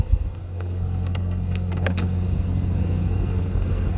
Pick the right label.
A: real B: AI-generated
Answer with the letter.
B